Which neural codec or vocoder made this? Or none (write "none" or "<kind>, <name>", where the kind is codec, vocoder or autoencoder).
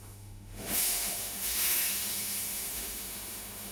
autoencoder, DAC-VAE